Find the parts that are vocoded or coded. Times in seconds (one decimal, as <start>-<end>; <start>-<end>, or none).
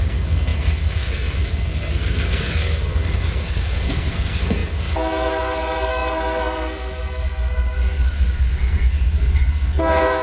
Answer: 0.0-10.2